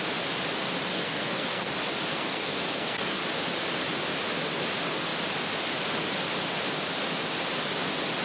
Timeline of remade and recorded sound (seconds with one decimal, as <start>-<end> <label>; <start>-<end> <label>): 0.0-0.9 recorded; 0.9-1.7 remade; 1.7-2.1 recorded; 2.1-3.2 remade; 3.2-8.2 recorded